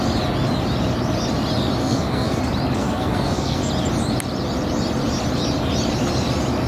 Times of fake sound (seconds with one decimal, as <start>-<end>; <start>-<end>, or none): 1.8-2.4; 2.8-3.7